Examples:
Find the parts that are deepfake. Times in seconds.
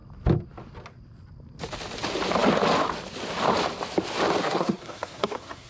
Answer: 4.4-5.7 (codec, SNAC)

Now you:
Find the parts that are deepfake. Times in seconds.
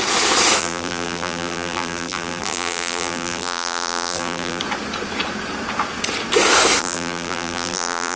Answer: 0.6-4.6 (vocoder, BigVGAN v2); 6.8-8.2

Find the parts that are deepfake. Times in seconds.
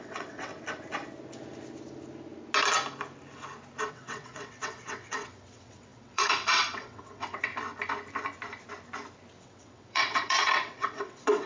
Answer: 0.0-0.5 (vocoder, WaveNeXt); 3.9-7.5; 9.4-11.5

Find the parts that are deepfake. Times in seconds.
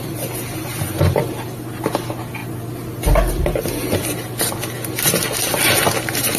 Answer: none